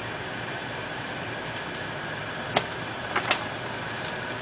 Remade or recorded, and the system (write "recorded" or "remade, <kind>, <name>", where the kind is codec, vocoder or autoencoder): recorded